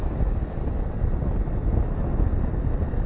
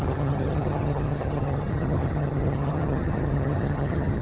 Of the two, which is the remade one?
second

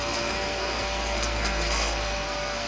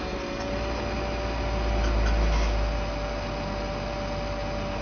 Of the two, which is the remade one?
first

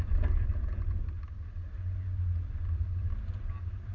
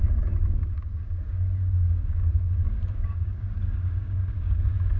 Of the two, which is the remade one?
second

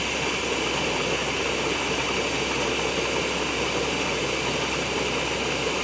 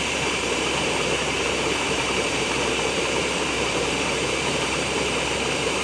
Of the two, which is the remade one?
second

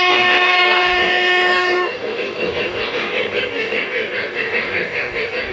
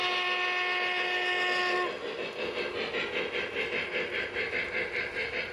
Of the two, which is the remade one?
first